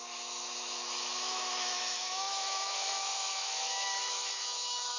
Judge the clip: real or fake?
fake